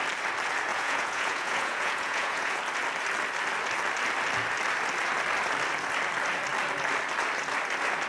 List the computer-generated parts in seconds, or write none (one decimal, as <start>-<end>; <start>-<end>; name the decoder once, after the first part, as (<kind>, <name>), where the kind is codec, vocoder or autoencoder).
0.7-2.6 (vocoder, Vocos)